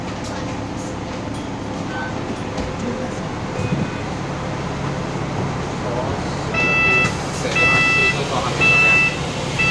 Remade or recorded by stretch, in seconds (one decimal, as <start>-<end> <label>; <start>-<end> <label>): 0.0-9.7 recorded